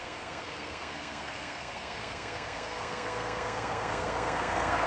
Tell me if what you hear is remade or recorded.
remade